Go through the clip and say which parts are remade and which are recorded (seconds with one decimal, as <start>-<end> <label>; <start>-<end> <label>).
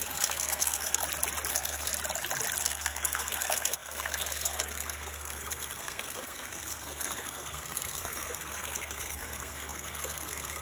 0.0-1.0 remade; 1.0-1.5 recorded; 1.5-1.9 remade; 1.9-2.6 recorded; 2.6-10.6 remade